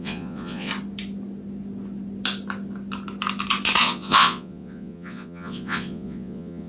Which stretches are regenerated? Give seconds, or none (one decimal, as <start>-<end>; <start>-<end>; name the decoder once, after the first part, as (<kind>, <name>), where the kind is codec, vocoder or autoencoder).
0.0-0.7 (vocoder, Vocos); 3.8-6.7